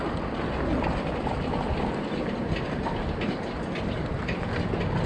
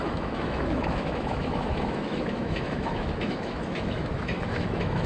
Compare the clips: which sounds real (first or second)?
first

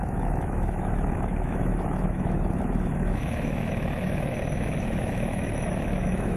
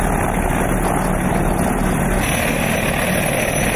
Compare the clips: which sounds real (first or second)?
second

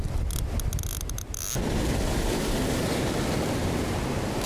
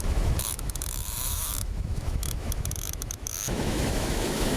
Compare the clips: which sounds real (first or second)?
first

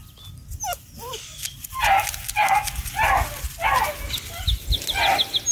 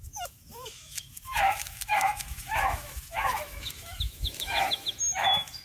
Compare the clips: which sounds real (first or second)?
first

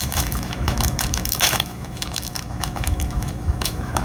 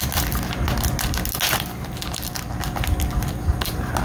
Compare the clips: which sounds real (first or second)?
second